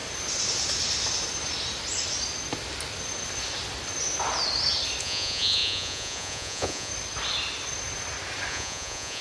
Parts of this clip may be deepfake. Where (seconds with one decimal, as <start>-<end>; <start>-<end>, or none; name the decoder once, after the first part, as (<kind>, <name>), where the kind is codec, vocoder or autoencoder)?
5.0-6.9 (vocoder, Vocos); 8.5-9.2